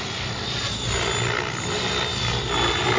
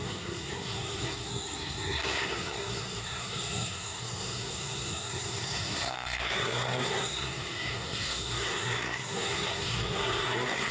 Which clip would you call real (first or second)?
first